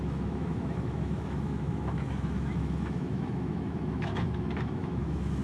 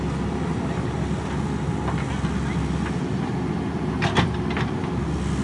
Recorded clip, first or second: second